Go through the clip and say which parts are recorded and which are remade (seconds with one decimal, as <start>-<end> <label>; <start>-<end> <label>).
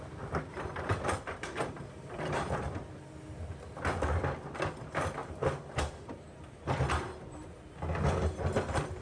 0.0-0.5 recorded; 0.5-2.9 remade; 2.9-5.2 recorded; 5.2-7.6 remade; 7.6-9.0 recorded